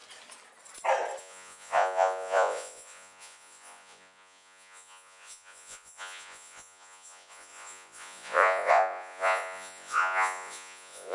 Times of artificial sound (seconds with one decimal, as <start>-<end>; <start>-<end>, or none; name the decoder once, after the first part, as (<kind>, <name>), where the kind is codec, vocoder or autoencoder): 1.2-11.1 (vocoder, Vocos)